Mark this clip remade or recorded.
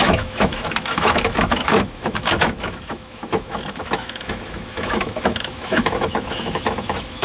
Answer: remade